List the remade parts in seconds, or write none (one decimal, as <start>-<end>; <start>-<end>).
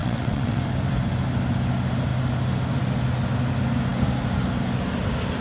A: 0.0-0.6